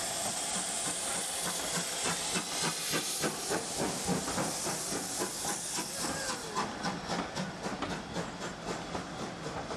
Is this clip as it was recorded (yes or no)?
yes